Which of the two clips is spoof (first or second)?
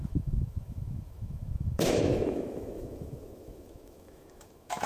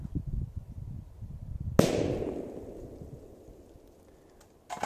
first